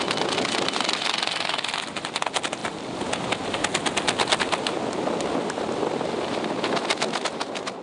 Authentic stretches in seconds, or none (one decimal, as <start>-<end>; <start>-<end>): 0.0-7.8